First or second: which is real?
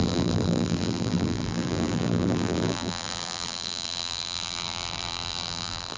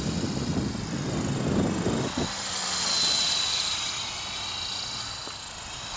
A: second